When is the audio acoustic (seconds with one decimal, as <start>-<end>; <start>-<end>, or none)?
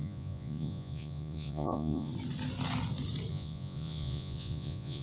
2.1-3.3